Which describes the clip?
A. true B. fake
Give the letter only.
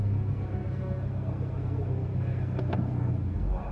B